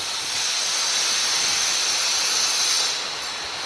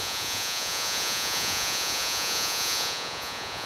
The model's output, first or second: second